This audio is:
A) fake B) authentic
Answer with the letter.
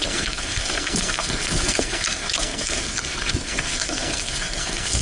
A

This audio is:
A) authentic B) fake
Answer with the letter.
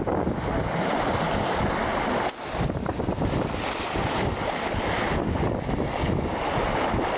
A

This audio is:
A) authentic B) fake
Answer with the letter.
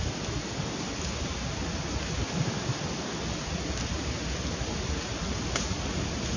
A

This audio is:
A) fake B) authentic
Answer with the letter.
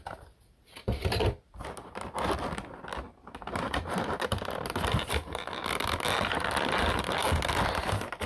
B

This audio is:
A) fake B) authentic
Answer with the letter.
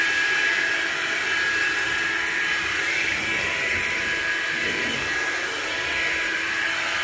B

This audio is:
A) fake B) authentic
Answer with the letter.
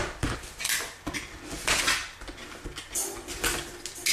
B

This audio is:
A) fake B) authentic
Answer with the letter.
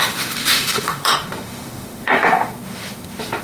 A